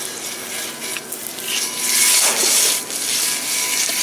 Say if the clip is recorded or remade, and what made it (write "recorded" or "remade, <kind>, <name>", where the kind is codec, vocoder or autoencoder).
recorded